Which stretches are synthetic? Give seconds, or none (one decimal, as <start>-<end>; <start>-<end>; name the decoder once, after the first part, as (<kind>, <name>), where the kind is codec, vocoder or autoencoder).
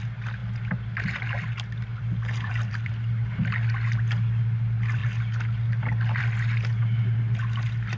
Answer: 1.9-2.9 (vocoder, BigVGAN v2)